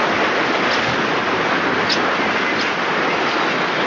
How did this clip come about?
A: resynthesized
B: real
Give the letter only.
B